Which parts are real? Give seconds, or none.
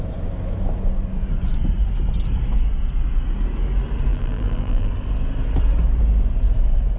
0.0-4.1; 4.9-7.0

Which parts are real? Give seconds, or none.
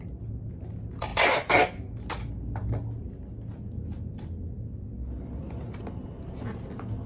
0.0-7.1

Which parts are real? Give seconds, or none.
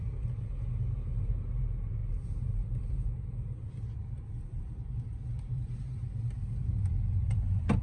0.0-4.6; 5.8-7.8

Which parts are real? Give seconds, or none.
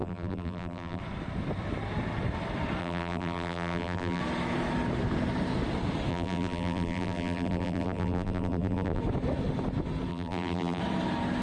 1.0-2.8; 4.2-6.1; 9.0-10.1; 10.8-11.4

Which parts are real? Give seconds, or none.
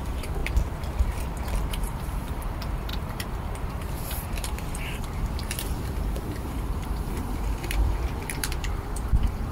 0.4-1.7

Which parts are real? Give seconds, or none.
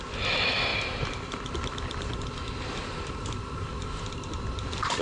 0.0-0.7; 3.7-5.0